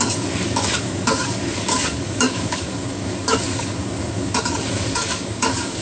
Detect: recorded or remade remade